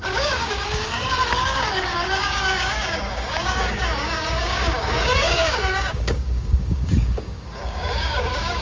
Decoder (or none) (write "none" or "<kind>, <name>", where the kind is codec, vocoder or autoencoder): codec, DAC